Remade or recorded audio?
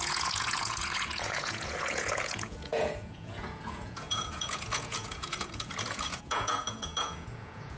remade